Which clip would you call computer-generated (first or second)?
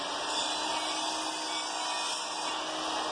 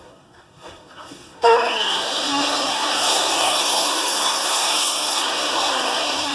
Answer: second